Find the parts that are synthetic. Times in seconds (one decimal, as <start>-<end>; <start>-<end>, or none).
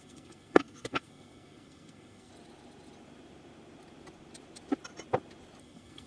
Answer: 0.0-2.3; 5.6-6.1